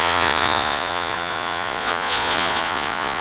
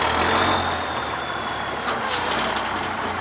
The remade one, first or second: first